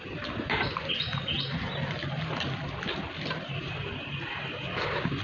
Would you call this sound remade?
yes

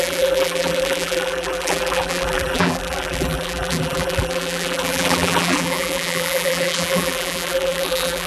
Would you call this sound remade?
yes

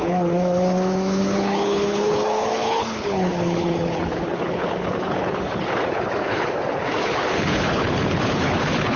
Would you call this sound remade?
yes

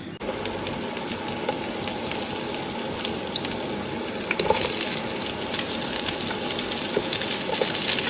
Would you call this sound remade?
no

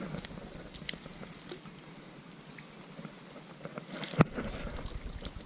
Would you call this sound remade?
no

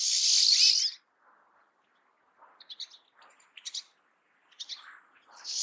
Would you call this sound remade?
no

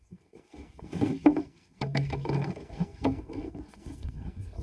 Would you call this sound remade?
yes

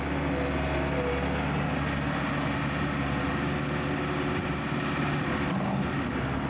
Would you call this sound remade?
no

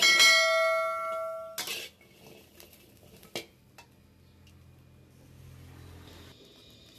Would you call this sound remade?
no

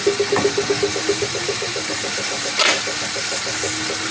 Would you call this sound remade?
no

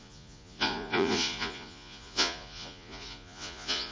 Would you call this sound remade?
yes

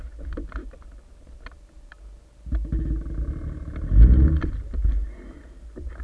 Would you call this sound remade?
no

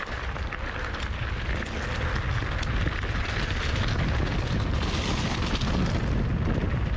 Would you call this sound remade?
no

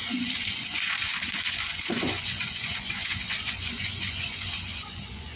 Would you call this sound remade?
yes